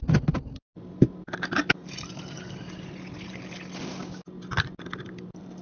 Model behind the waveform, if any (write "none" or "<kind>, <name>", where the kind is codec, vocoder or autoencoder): none